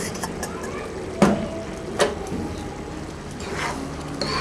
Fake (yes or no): no